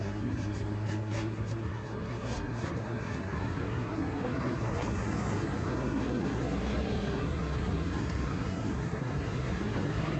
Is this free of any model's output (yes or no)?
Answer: no